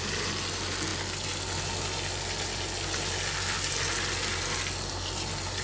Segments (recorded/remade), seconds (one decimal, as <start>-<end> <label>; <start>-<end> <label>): 0.0-5.6 recorded